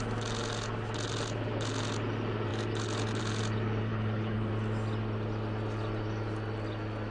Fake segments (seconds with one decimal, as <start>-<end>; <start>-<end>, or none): 3.9-4.5